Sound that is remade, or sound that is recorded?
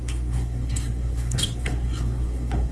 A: remade